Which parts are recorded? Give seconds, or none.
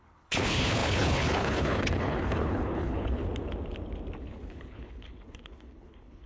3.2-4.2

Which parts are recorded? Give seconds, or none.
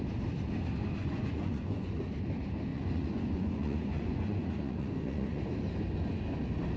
0.0-1.0; 1.9-2.7; 5.4-6.8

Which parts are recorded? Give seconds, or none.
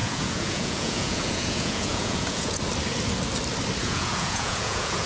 2.6-3.8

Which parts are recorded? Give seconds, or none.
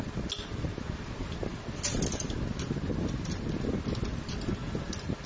0.0-5.3